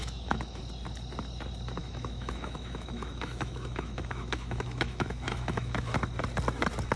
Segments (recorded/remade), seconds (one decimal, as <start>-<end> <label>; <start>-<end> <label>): 0.0-0.6 remade; 0.6-1.8 recorded; 1.8-5.9 remade; 5.9-7.0 recorded